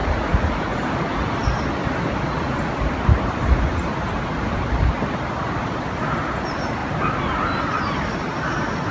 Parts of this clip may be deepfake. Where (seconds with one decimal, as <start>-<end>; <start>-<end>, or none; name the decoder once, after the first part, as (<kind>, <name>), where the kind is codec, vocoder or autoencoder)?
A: 0.0-0.9 (vocoder, Vocos)